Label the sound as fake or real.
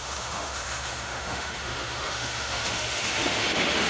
fake